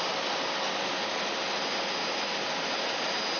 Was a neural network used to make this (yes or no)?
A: no